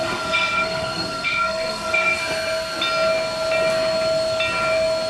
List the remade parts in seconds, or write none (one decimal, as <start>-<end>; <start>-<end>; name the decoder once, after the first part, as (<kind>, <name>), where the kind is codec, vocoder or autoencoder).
0.0-2.2 (codec, SNAC)